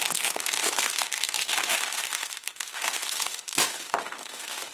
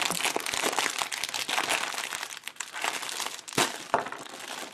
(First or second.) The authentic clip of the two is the second